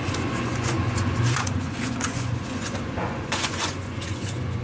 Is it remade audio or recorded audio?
remade